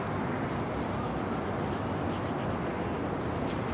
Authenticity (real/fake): real